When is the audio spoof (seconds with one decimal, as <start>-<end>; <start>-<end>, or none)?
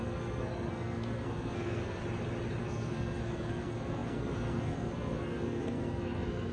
0.0-2.0; 2.6-6.5